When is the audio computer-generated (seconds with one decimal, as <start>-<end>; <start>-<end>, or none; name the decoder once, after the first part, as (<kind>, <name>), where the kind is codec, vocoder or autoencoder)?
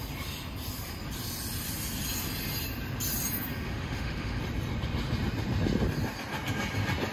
3.5-4.4 (autoencoder, DAC-VAE)